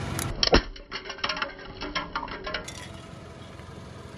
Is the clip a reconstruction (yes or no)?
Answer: no